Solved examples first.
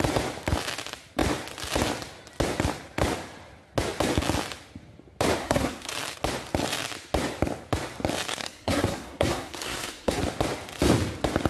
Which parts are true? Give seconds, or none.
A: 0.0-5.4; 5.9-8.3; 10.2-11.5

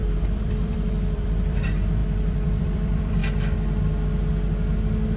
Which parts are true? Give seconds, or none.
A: 3.2-5.2

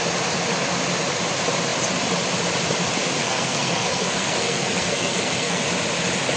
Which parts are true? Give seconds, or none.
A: 0.0-3.2; 5.6-6.4

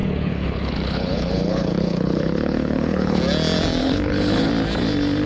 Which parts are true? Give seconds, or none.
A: 3.2-3.8; 4.5-5.3

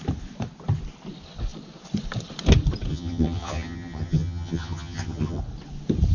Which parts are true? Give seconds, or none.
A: 0.0-2.9; 5.4-6.1

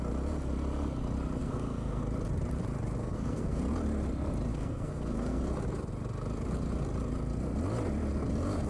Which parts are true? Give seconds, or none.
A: 0.0-1.4; 2.0-3.0; 3.6-4.5; 5.4-8.7

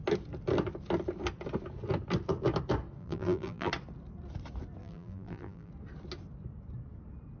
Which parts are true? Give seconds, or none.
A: 0.0-3.0; 3.7-4.8; 5.7-7.4

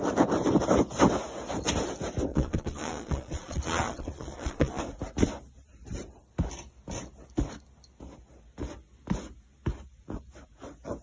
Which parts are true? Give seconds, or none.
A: 0.0-2.3; 4.8-11.0